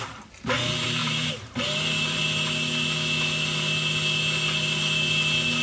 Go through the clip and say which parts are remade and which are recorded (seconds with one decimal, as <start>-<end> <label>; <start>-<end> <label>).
0.0-1.0 recorded; 1.0-2.2 remade; 2.2-5.6 recorded